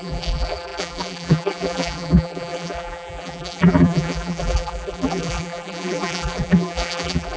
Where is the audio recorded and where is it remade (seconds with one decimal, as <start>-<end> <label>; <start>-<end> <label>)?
0.0-7.4 remade